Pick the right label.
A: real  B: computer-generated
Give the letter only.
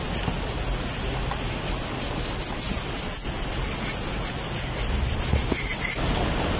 A